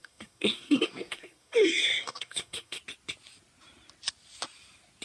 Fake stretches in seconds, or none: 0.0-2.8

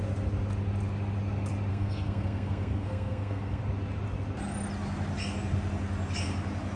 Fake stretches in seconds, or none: 1.7-3.6